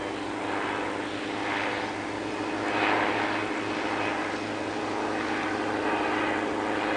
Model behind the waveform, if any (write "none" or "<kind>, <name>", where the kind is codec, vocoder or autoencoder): none